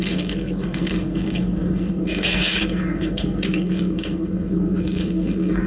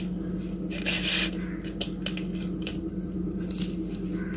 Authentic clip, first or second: second